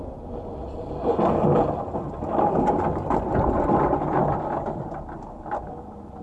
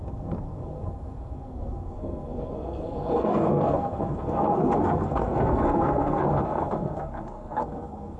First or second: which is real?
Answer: first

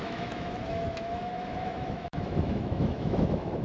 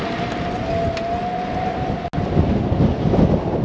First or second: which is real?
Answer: second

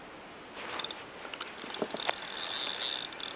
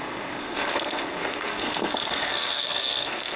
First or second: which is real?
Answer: first